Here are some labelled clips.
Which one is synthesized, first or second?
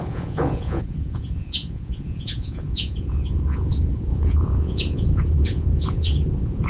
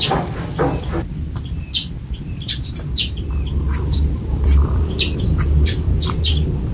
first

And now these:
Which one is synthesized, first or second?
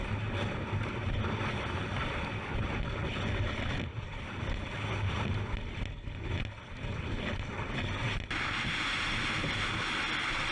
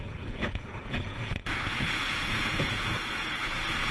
second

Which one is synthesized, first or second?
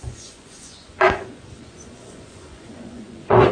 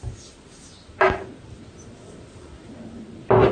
first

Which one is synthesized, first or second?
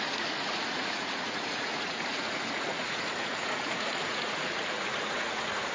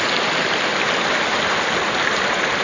first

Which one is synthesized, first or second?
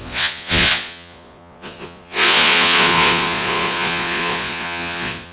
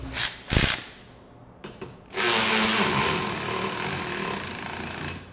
first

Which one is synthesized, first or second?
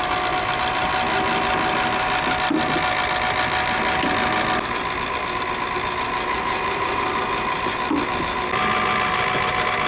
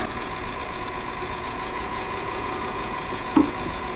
second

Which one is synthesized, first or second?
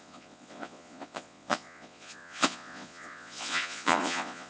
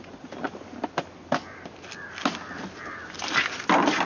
first